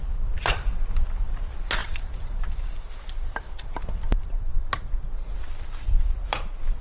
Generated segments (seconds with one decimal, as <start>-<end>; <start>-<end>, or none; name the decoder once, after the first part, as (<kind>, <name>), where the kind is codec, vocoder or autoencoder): none